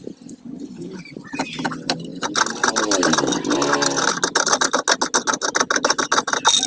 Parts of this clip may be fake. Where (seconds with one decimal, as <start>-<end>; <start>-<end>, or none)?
0.4-1.0